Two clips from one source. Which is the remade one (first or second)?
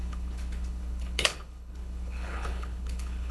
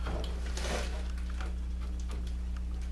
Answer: first